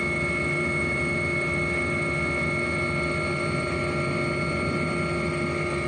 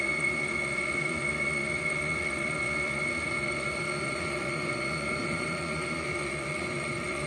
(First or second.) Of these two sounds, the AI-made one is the second